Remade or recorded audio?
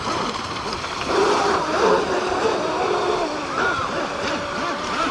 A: remade